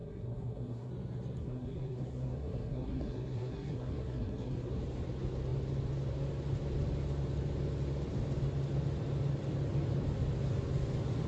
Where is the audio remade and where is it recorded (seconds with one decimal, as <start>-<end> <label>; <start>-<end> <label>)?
0.0-0.9 remade; 0.9-1.4 recorded; 1.4-4.7 remade; 4.7-11.3 recorded

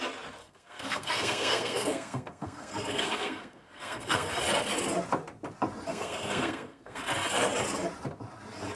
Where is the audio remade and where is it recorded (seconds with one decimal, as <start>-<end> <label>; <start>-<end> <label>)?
0.0-0.4 recorded; 0.4-4.3 remade; 4.3-5.9 recorded; 5.9-7.0 remade; 7.0-8.8 recorded

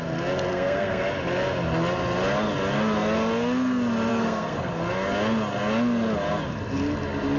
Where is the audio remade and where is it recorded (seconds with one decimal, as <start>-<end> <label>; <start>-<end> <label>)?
0.0-0.5 recorded; 0.5-1.0 remade; 1.0-4.1 recorded; 4.1-4.7 remade; 4.7-7.4 recorded

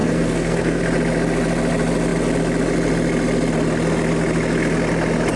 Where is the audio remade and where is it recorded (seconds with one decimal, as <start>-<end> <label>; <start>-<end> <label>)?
0.0-0.8 remade; 0.8-5.4 recorded

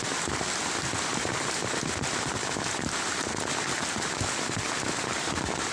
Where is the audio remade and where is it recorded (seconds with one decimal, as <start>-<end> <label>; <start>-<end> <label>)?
0.0-5.7 recorded

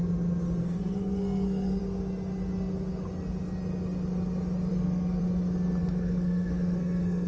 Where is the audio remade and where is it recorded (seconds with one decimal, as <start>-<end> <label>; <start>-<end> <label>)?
0.0-0.6 recorded; 0.6-1.8 remade; 1.8-4.7 recorded; 4.7-5.2 remade; 5.2-5.8 recorded; 5.8-7.3 remade

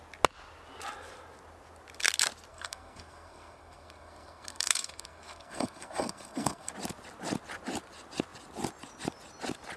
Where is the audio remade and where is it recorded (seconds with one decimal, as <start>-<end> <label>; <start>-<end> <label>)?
0.0-2.5 recorded; 2.5-6.7 remade; 6.7-9.8 recorded

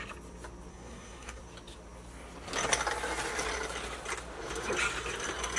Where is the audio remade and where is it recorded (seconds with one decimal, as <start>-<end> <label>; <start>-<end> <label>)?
0.0-0.7 recorded; 0.7-1.4 remade; 1.4-5.6 recorded